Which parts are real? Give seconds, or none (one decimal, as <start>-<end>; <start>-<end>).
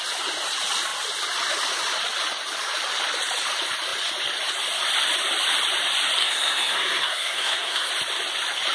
0.0-6.2; 7.9-8.7